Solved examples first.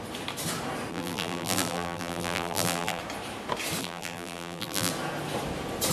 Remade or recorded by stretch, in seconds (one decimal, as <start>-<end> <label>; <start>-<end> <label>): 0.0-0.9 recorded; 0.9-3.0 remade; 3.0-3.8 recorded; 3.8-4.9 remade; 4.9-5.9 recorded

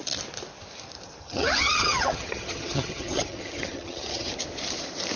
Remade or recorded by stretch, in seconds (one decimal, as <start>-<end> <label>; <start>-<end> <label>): 0.0-1.2 recorded; 1.2-4.3 remade; 4.3-5.2 recorded

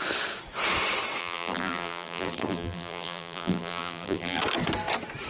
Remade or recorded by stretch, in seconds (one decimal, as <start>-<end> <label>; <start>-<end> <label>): 0.0-1.2 recorded; 1.2-4.4 remade; 4.4-5.3 recorded

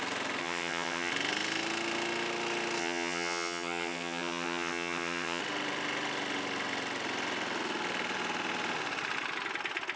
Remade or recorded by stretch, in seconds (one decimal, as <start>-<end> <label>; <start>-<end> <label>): 0.0-0.4 recorded; 0.4-1.1 remade; 1.1-2.8 recorded; 2.8-5.4 remade; 5.4-10.0 recorded

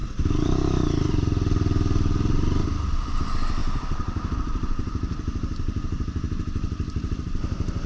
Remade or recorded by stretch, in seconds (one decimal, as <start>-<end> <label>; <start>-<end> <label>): 0.0-3.6 recorded; 3.6-7.9 remade

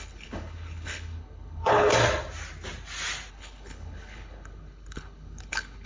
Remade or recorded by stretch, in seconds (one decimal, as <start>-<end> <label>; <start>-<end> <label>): 0.0-1.9 remade; 1.9-3.3 recorded; 3.3-5.9 remade